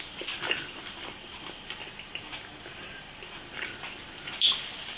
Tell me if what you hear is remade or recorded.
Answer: recorded